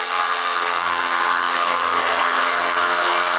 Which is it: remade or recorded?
remade